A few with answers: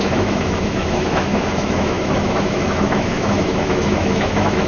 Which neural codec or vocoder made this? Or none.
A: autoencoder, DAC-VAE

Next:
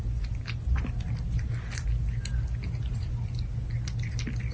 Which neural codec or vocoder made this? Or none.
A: none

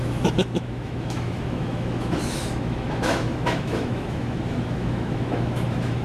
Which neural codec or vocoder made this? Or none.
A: autoencoder, DAC-VAE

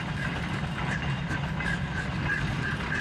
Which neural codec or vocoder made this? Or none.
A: none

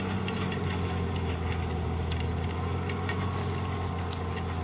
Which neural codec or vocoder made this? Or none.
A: none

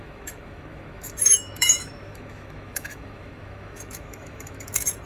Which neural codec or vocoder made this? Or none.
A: autoencoder, DAC-VAE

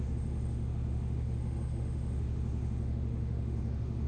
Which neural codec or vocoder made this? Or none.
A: autoencoder, DAC-VAE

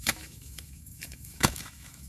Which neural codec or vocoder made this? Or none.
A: autoencoder, DAC-VAE